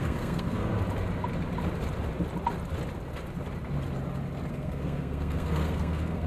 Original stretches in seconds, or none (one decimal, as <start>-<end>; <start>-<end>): 0.7-4.5